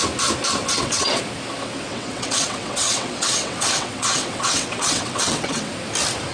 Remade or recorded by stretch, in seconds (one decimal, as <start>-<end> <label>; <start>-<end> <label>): 0.0-0.6 recorded; 0.6-1.2 remade; 1.2-1.9 recorded; 1.9-5.7 remade; 5.7-6.3 recorded